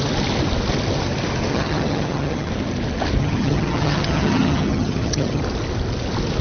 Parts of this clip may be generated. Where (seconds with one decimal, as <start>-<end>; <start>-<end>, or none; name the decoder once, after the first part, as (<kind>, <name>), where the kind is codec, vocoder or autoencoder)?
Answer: 1.5-2.5 (vocoder, HiFi-GAN); 3.2-5.4